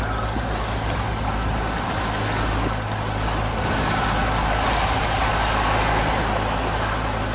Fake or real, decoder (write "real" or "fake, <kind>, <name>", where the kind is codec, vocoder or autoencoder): real